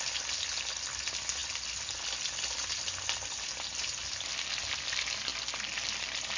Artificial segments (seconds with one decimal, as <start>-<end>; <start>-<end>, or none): none